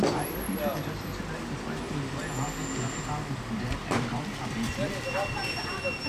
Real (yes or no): yes